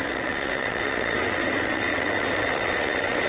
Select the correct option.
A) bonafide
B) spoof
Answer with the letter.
B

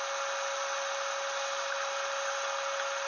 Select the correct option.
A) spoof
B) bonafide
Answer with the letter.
B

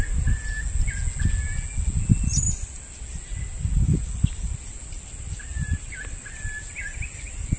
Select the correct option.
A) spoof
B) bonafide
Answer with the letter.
B